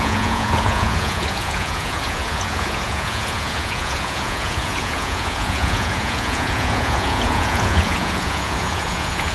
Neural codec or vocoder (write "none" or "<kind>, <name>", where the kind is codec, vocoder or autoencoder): vocoder, Vocos